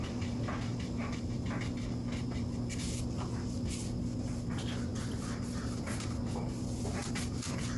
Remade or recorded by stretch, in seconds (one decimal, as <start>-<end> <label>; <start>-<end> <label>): 0.0-4.9 recorded; 4.9-5.8 remade; 5.8-7.0 recorded; 7.0-7.8 remade